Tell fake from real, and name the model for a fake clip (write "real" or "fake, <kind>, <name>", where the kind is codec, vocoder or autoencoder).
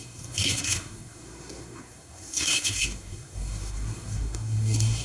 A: fake, codec, SNAC